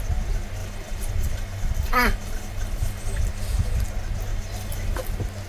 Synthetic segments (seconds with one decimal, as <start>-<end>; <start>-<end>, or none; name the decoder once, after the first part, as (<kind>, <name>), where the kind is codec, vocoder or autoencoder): 0.6-3.3 (vocoder, BigVGAN v2); 4.3-5.1